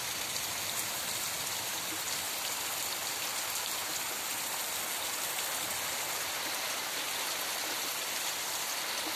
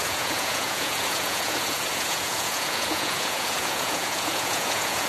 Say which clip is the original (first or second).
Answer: first